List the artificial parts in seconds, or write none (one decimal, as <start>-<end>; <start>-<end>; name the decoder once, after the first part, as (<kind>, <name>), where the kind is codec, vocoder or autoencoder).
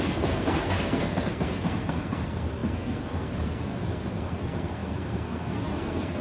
0.0-6.2 (codec, SNAC)